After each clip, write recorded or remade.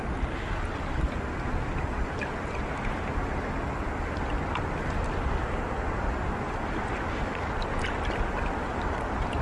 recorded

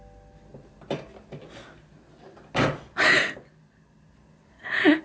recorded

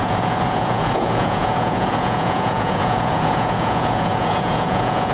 remade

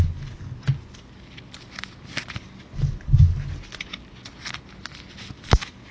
recorded